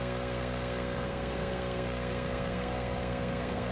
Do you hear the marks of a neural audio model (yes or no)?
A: yes